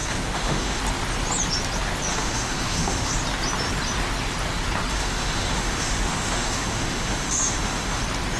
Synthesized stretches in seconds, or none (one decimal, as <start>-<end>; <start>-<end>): 0.0-0.8; 2.1-3.1; 4.9-8.0